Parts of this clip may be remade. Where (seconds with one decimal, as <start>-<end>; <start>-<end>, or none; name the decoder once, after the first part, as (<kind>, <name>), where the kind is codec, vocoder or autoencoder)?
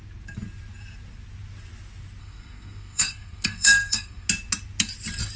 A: 2.2-4.3 (codec, SNAC)